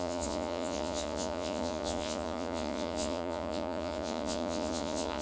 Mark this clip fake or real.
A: fake